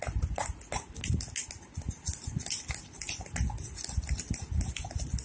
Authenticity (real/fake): real